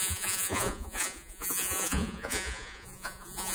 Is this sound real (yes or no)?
no